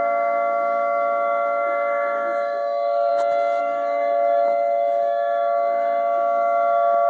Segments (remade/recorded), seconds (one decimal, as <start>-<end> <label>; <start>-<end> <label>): 0.0-3.1 remade; 3.1-3.6 recorded; 3.6-7.1 remade